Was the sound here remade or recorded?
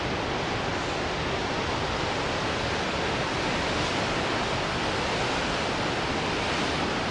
recorded